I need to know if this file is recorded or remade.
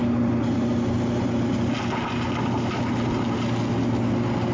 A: recorded